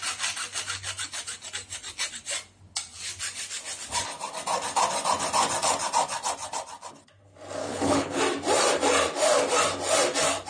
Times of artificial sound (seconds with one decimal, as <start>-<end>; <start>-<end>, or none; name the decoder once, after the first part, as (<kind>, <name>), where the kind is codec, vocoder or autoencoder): 7.6-8.2 (codec, HILCodec)